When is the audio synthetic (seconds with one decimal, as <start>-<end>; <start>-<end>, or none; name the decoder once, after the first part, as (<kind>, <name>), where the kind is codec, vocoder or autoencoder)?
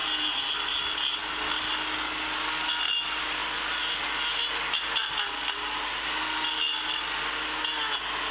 0.0-0.7 (vocoder, BigVGAN v2)